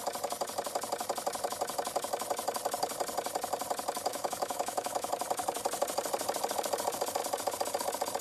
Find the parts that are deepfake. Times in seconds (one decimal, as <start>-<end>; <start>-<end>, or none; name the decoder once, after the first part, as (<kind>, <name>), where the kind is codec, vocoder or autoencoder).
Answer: 4.1-5.1 (autoencoder, DAC-VAE)